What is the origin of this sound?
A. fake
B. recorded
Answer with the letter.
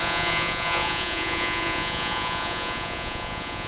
A